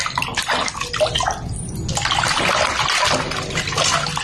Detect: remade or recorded recorded